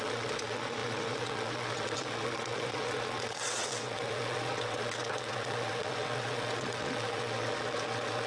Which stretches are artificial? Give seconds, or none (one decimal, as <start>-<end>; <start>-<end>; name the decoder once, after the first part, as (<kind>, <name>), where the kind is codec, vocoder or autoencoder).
0.0-8.3 (vocoder, WaveNeXt)